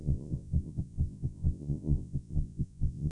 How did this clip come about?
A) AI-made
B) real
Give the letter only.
A